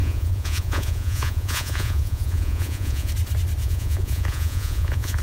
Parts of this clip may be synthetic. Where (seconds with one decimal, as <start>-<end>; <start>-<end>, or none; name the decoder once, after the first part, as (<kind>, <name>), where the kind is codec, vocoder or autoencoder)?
0.0-3.1 (vocoder, Vocos); 3.6-5.2